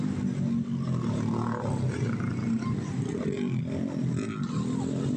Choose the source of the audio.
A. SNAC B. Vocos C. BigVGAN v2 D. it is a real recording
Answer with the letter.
D